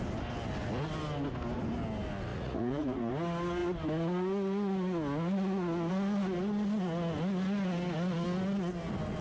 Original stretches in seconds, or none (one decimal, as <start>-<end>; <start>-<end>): 0.0-2.3; 3.1-9.2